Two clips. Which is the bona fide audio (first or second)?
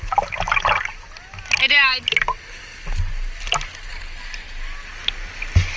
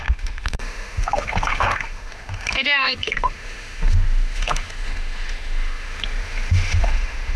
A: first